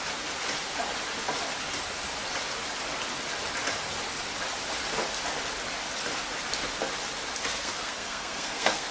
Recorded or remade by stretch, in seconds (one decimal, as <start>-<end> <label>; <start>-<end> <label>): 0.0-7.5 recorded; 7.5-8.9 remade